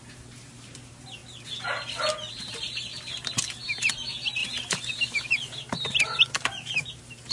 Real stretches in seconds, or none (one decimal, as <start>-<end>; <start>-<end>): 1.2-2.3